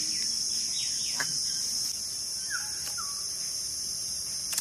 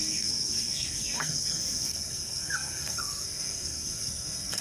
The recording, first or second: first